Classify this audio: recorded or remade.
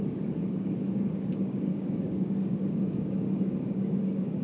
remade